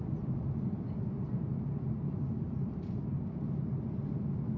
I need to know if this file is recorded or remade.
recorded